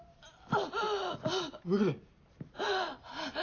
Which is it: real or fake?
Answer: real